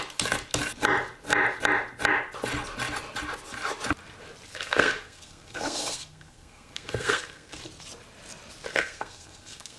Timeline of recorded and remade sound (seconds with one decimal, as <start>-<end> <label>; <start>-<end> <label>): 0.0-4.5 recorded; 4.5-7.6 remade; 7.6-8.7 recorded; 8.7-9.8 remade